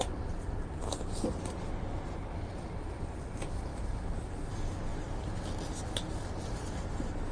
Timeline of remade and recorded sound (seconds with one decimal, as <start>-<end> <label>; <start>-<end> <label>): 0.0-7.3 recorded